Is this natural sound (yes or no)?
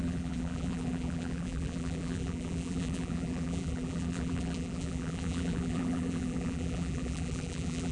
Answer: no